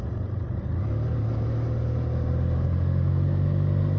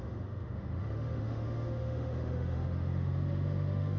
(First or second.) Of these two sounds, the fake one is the second